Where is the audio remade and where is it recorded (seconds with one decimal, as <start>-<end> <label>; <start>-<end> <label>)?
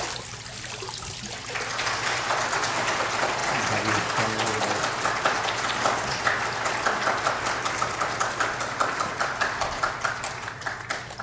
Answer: 0.0-11.2 recorded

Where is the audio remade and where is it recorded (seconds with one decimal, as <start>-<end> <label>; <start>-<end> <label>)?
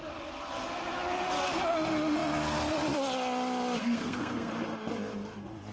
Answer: 0.0-3.8 recorded; 3.8-4.5 remade; 4.5-5.7 recorded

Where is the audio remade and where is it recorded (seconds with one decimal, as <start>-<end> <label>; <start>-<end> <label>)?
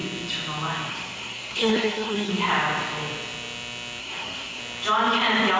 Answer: 0.0-0.9 recorded; 0.9-2.3 remade; 2.3-4.0 recorded; 4.0-4.6 remade; 4.6-5.6 recorded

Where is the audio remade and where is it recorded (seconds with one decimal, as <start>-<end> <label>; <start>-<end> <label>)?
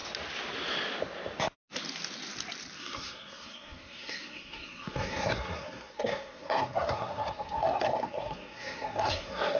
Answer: 0.0-2.8 recorded; 2.8-9.6 remade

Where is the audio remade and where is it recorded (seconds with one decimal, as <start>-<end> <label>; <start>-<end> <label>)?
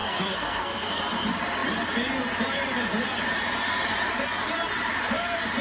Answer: 0.0-1.0 remade; 1.0-5.6 recorded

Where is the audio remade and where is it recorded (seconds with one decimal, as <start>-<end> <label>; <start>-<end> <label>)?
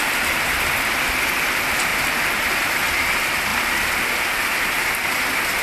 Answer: 0.0-5.6 recorded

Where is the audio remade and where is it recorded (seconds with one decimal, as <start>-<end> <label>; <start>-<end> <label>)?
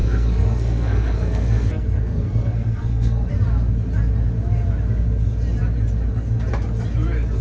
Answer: 0.0-3.3 remade; 3.3-7.4 recorded